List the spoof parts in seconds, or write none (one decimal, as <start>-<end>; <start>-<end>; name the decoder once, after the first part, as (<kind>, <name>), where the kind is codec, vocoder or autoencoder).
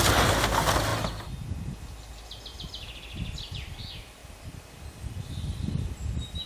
4.2-4.8 (vocoder, BigVGAN v2); 5.5-6.5